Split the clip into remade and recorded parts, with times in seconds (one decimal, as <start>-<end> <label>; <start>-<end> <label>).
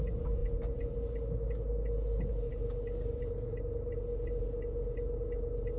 0.0-5.8 recorded